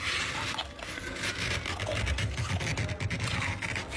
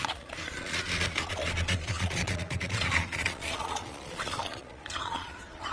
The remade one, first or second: second